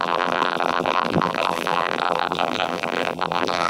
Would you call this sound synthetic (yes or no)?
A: yes